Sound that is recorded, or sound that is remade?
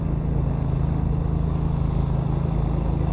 recorded